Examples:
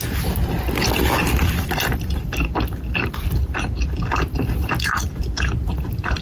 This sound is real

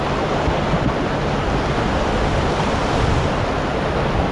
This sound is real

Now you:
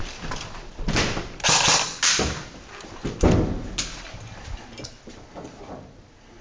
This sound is real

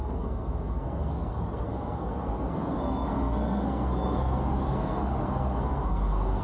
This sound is fake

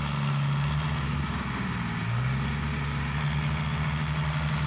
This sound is real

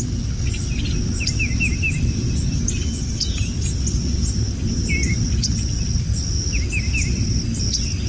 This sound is real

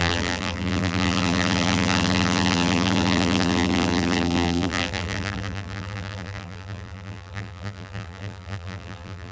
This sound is fake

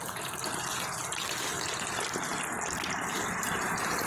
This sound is real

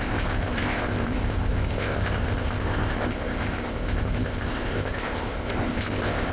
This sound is fake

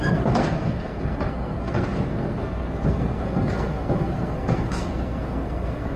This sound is fake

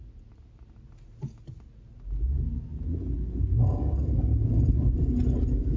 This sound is real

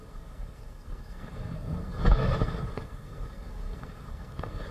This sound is fake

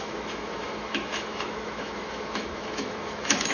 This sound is fake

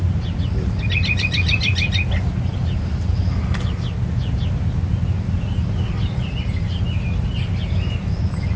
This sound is real